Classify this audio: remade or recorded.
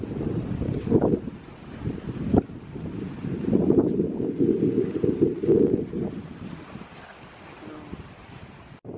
recorded